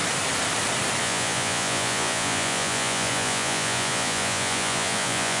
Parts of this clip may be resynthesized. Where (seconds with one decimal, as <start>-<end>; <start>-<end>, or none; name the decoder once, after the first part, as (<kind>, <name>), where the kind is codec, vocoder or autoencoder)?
1.0-5.4 (vocoder, Vocos)